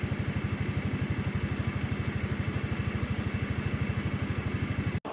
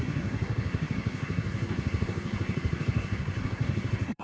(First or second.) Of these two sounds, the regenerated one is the second